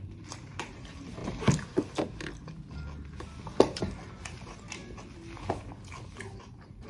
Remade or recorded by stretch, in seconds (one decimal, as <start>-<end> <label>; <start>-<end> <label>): 0.0-1.2 remade; 1.2-3.8 recorded; 3.8-4.8 remade; 4.8-6.5 recorded; 6.5-6.9 remade